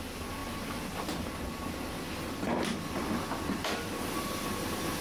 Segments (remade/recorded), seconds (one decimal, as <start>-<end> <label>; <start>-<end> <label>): 0.0-5.0 recorded